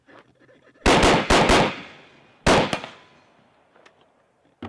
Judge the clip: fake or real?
real